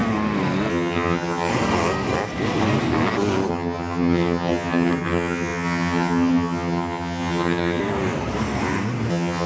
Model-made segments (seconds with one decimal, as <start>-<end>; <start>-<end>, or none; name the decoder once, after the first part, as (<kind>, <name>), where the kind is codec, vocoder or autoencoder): 0.7-1.5 (vocoder, HiFi-GAN); 3.5-7.8; 9.1-9.5